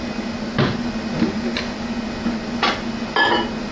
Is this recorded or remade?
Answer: recorded